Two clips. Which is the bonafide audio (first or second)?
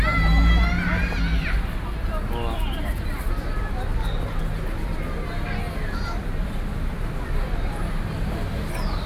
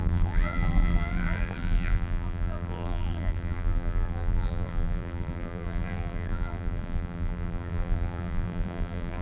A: first